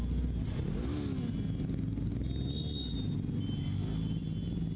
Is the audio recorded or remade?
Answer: recorded